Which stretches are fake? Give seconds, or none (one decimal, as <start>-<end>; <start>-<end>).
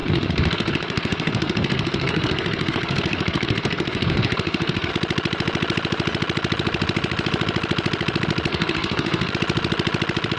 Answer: 0.0-4.9; 8.5-9.3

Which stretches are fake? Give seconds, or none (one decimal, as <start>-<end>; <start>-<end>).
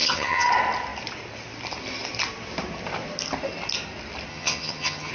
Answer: 0.0-0.5; 4.3-5.1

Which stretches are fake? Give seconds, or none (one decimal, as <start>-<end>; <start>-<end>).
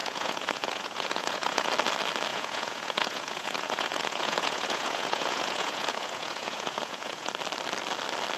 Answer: 0.0-1.7; 2.3-7.3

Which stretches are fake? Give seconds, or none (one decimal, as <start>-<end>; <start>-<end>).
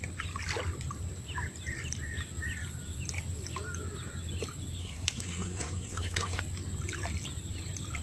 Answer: 4.8-6.4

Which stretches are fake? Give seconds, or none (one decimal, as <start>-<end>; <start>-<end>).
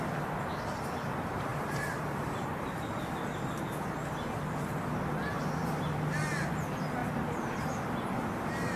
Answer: none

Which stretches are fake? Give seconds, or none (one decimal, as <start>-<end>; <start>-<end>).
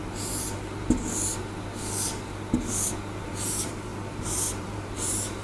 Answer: 3.2-3.9; 4.5-5.4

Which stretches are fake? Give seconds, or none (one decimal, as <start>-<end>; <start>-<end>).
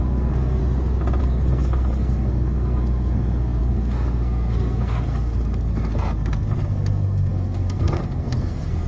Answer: 0.0-0.6; 1.2-8.9